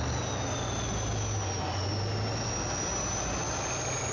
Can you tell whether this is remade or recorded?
recorded